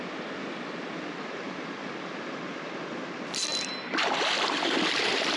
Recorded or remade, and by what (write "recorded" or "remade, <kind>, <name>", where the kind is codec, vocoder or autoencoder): recorded